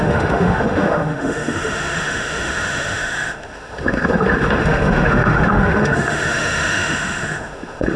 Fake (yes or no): yes